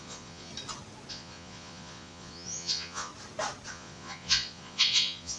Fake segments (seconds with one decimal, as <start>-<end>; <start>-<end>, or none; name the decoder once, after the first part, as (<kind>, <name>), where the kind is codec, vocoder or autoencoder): 0.0-0.5 (vocoder, Vocos); 1.1-3.1; 3.7-5.4